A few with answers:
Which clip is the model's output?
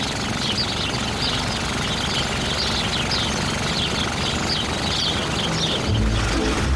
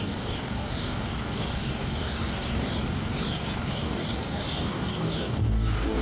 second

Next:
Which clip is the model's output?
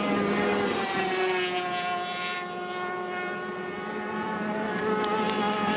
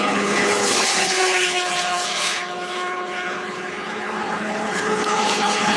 second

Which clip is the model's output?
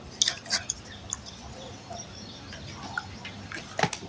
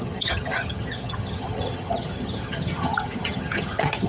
second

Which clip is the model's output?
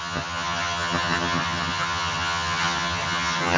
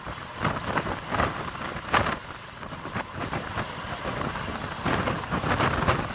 first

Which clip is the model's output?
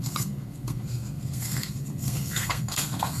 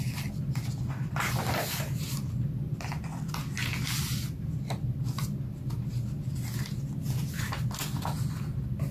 first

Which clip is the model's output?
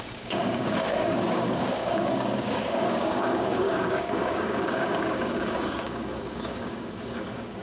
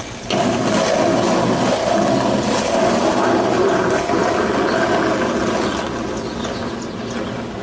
first